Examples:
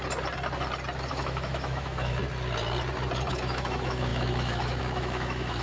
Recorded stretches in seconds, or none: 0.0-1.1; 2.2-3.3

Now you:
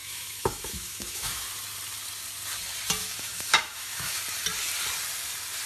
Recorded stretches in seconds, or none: 1.5-3.0; 4.2-5.7